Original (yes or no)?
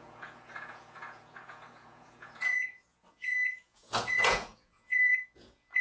no